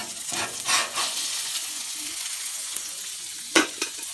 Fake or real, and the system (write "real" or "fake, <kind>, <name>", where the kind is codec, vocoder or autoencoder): fake, vocoder, Vocos